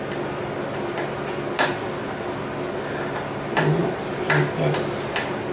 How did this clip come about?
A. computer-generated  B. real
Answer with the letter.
B